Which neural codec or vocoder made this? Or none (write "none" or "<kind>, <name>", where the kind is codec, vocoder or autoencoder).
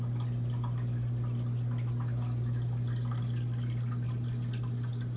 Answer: none